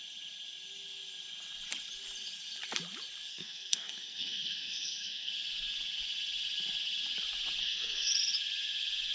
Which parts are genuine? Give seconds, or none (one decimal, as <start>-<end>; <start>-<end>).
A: 0.0-3.3; 5.3-7.6; 8.1-9.1

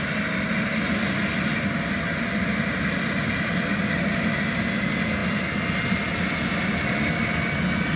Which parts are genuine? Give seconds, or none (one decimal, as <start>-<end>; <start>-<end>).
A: 0.0-8.0

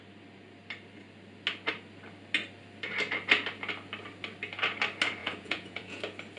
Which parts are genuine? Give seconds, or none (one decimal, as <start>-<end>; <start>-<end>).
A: 0.0-5.2; 6.0-6.4

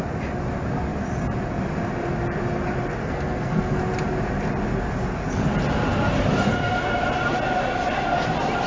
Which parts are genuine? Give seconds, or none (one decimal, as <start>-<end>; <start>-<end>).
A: 0.0-3.0; 3.8-8.7

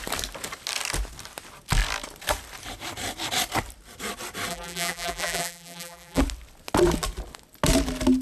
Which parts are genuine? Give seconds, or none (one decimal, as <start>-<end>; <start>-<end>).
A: 0.0-4.5; 6.2-8.2